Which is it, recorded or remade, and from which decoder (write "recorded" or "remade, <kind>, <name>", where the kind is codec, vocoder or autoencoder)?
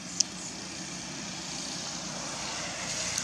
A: recorded